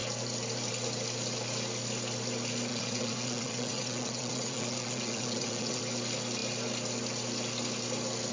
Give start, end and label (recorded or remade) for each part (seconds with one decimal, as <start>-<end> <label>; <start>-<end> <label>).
0.0-2.7 recorded; 2.7-5.8 remade; 5.8-8.3 recorded